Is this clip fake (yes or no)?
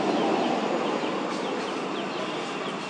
no